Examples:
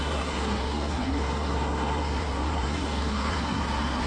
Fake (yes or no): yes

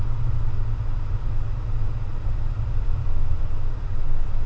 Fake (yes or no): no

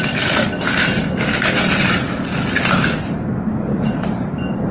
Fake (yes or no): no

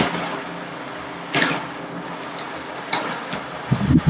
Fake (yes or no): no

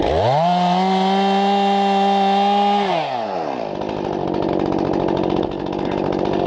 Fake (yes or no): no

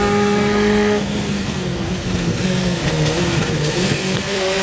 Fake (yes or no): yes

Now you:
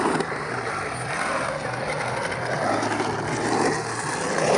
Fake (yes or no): no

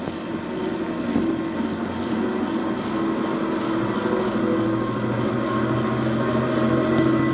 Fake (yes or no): no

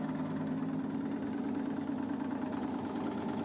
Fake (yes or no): no